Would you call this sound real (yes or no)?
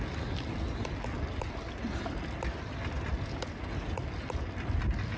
yes